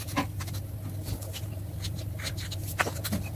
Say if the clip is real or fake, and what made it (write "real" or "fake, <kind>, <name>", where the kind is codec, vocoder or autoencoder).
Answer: real